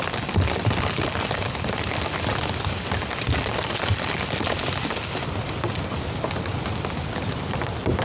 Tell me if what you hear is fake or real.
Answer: real